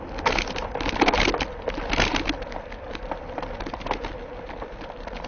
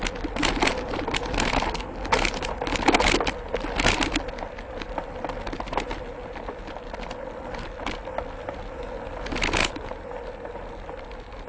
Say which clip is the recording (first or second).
second